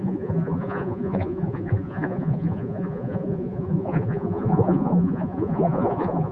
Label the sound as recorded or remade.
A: remade